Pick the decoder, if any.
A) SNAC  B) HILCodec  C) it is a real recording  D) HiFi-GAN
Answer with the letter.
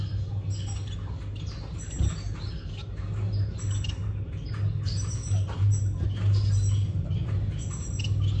C